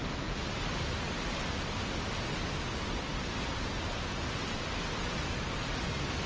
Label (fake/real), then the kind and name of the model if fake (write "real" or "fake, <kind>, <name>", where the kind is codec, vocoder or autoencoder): real